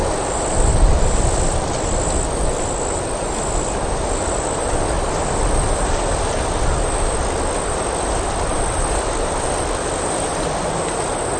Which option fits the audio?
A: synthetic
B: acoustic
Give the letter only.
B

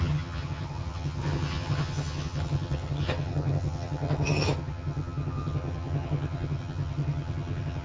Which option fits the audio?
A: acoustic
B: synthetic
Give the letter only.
B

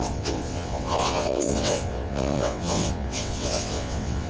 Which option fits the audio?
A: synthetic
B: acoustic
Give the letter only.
A